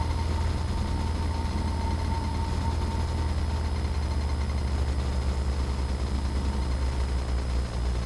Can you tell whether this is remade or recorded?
recorded